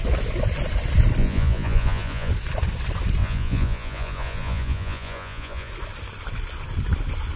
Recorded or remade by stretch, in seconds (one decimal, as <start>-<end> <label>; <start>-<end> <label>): 0.0-1.2 recorded; 1.2-2.3 remade; 2.3-3.2 recorded; 3.2-5.7 remade; 5.7-7.4 recorded